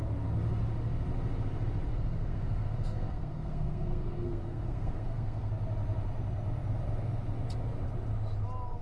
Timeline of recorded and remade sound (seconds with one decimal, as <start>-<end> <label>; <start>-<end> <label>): 0.0-1.9 recorded; 1.9-5.5 remade; 5.5-8.8 recorded